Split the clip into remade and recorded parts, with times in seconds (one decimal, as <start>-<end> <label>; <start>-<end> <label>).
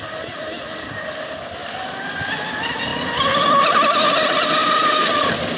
0.0-5.6 recorded